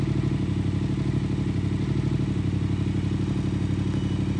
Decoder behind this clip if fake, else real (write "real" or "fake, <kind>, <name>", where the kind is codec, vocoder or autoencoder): real